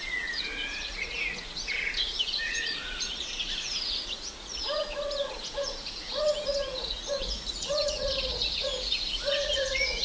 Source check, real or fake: fake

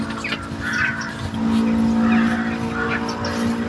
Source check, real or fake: real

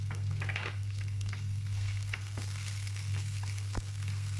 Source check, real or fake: fake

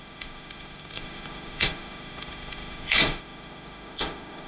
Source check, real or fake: fake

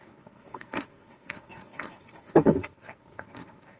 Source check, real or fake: fake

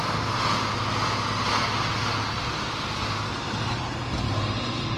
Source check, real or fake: real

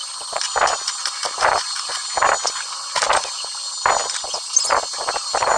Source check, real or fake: real